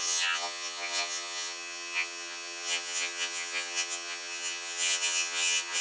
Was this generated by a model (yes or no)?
yes